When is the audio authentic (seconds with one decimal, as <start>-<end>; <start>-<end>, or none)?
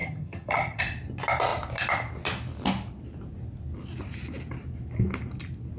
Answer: 0.8-5.8